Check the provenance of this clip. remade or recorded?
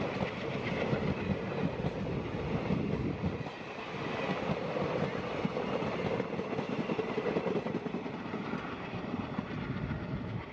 recorded